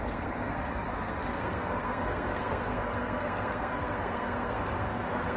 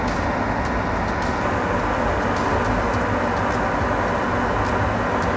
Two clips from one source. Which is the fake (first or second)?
first